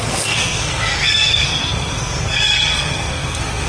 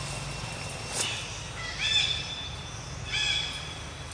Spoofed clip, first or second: first